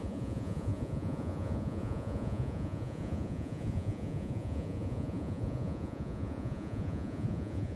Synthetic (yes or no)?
yes